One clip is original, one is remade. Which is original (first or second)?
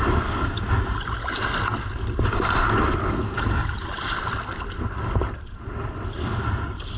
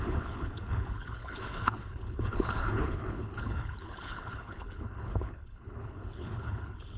first